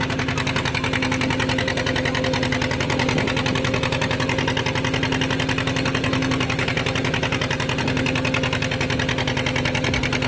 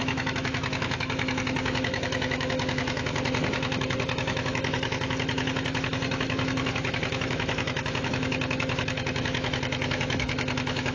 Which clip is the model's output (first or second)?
second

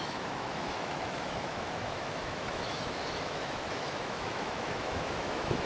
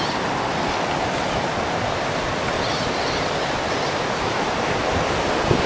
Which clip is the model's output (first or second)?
first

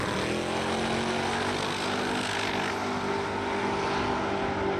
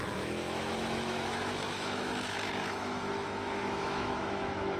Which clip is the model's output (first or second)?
second